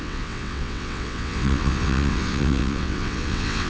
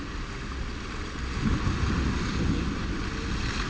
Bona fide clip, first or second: second